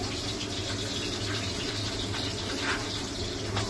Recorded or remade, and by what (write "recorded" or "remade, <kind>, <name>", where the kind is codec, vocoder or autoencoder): recorded